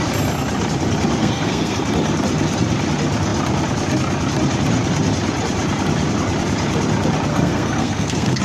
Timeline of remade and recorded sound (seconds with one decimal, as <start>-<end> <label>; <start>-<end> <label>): 0.0-1.2 recorded; 1.2-1.8 remade; 1.8-7.3 recorded; 7.3-8.4 remade